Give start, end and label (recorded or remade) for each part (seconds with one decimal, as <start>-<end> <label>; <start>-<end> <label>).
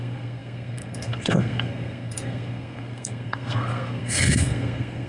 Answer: 0.0-5.1 remade